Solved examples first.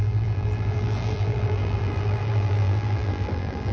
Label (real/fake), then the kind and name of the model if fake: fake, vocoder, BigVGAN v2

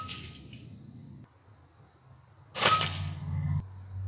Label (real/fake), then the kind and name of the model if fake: real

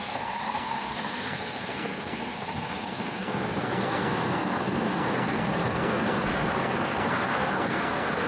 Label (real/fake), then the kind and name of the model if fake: fake, codec, SNAC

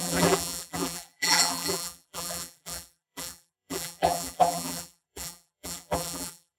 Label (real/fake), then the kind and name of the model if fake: fake, vocoder, BigVGAN v2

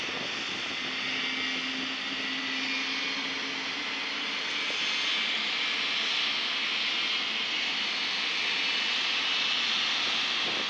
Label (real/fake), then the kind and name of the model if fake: real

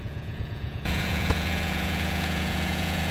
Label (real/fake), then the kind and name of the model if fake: fake, vocoder, Vocos